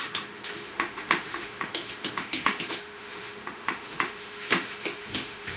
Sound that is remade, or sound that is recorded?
remade